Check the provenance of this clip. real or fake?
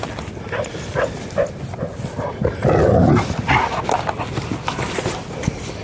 real